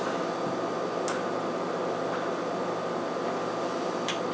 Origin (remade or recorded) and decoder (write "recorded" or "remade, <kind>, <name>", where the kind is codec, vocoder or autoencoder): recorded